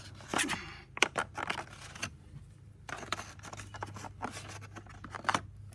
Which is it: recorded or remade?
recorded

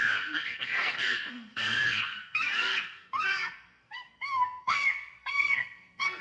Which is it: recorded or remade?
remade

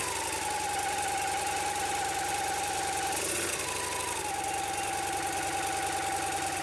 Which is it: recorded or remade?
recorded